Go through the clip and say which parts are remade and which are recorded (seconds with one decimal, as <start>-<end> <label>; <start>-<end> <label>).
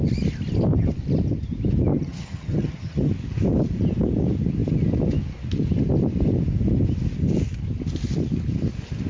0.0-1.9 recorded; 1.9-3.1 remade; 3.1-9.1 recorded